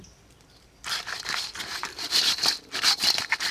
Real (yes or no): yes